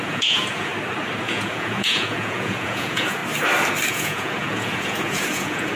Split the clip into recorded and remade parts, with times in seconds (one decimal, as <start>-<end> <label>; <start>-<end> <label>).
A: 0.0-0.7 remade; 0.7-1.2 recorded; 1.2-3.2 remade; 3.2-3.9 recorded; 3.9-5.8 remade